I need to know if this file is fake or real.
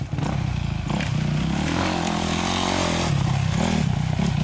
real